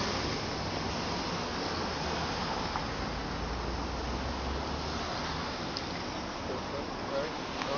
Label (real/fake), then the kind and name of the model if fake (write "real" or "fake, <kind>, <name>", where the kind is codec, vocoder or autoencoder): real